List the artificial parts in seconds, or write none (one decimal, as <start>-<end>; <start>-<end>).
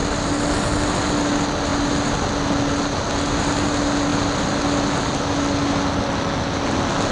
none